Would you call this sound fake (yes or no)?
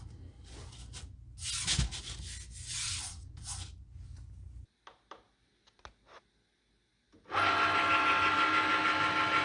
no